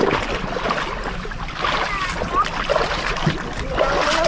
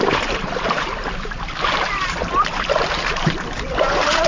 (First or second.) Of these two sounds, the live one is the first